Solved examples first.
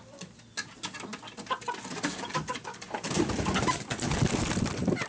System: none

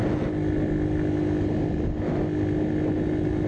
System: none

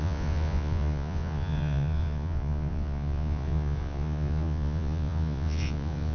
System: vocoder, Vocos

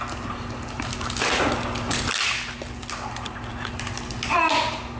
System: none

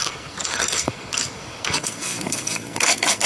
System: codec, SNAC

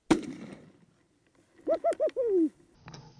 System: none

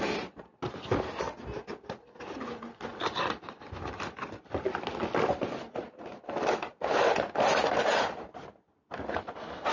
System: none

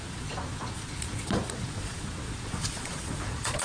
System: vocoder, Vocos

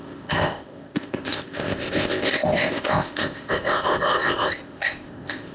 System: codec, ZipCodec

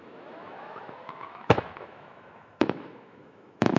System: autoencoder, DAC-VAE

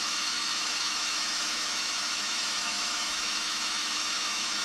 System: autoencoder, DAC-VAE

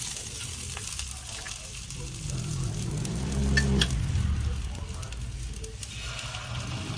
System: none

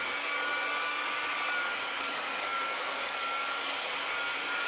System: codec, DAC